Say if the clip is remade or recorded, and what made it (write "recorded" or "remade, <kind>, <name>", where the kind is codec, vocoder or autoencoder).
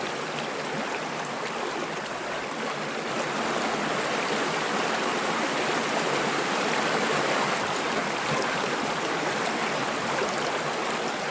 recorded